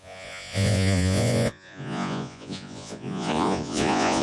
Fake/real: fake